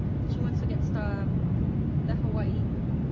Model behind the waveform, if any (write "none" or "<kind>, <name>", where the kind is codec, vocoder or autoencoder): none